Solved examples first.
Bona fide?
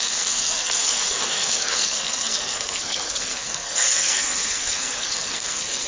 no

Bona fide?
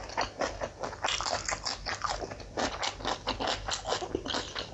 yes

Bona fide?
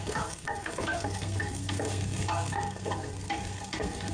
no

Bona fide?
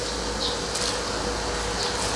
yes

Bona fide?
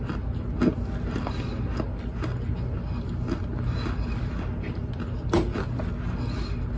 yes